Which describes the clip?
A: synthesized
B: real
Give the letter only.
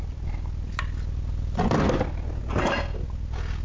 B